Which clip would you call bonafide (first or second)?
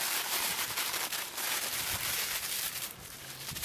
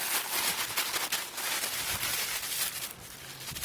second